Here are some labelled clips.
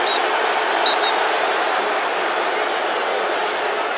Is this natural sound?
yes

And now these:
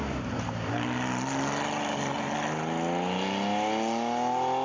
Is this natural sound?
yes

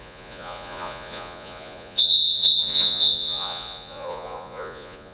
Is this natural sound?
no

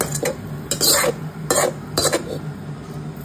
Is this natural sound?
yes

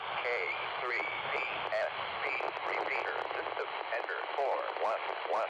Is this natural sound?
yes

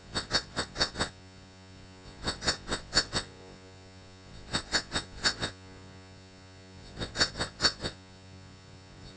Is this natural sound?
no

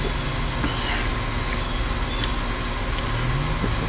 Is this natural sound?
yes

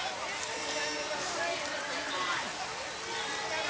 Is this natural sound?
yes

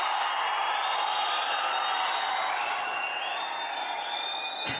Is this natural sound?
yes